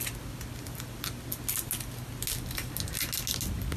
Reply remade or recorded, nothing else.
recorded